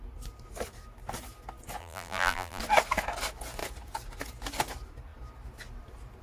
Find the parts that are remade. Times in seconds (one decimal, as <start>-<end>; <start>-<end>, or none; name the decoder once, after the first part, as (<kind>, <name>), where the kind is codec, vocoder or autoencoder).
1.8-2.6 (vocoder, BigVGAN v2)